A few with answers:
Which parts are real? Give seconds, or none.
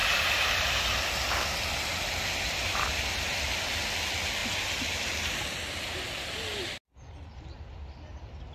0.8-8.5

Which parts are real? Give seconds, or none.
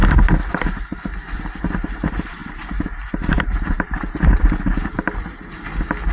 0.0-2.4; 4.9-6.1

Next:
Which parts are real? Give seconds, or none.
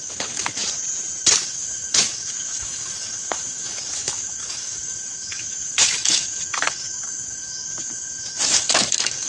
0.6-1.4